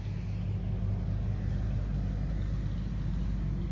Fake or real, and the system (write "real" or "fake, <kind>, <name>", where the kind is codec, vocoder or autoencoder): real